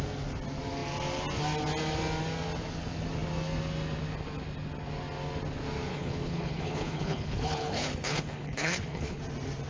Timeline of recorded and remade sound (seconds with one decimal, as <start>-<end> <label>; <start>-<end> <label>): 0.0-5.9 recorded; 5.9-9.2 remade; 9.2-9.7 recorded